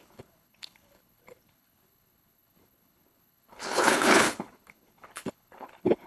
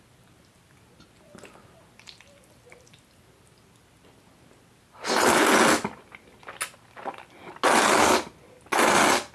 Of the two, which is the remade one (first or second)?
first